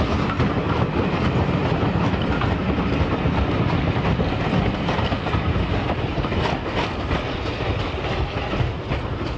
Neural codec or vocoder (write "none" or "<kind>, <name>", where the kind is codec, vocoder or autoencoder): none